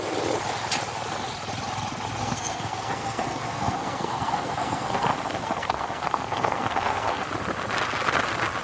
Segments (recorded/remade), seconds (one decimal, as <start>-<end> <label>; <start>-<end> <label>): 0.0-2.2 recorded; 2.2-7.3 remade; 7.3-8.6 recorded